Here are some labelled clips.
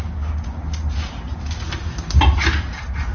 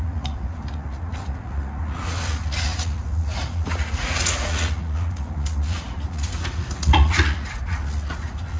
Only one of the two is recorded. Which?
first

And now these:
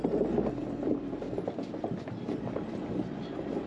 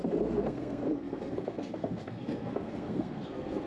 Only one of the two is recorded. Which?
first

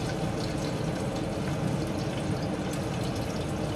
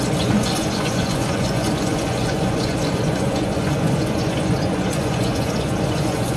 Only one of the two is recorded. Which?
first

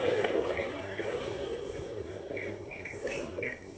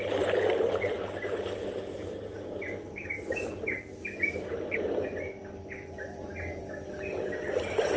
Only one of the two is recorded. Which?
second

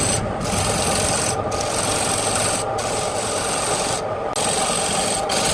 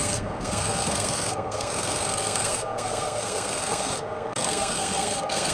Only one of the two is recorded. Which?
first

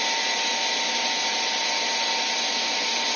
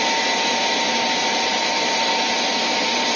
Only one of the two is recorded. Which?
first